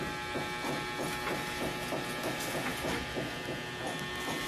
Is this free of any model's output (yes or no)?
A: yes